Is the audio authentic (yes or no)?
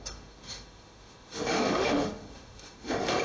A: no